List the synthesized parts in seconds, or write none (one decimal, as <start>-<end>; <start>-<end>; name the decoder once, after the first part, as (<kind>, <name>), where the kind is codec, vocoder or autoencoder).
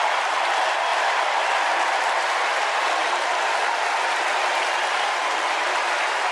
0.9-2.1 (vocoder, BigVGAN v2); 3.0-3.6